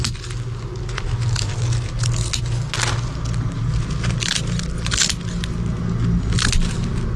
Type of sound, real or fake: real